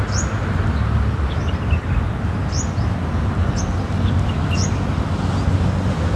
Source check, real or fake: real